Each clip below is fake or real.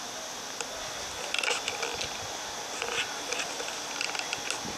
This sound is real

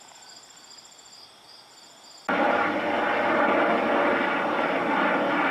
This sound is real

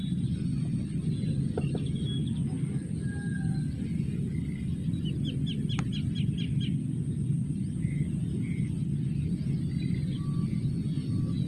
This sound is real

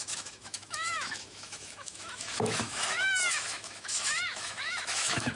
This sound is fake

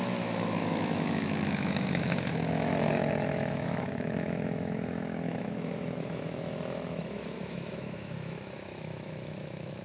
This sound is fake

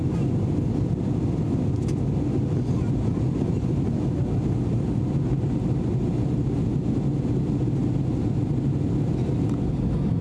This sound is real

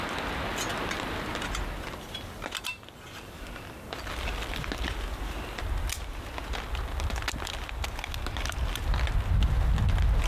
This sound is real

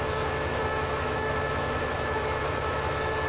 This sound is fake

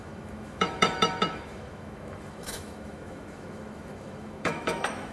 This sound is fake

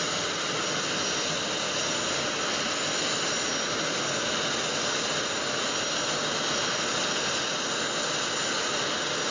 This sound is real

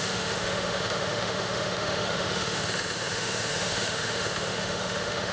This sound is fake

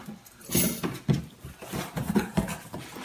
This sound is real